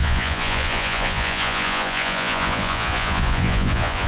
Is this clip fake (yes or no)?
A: yes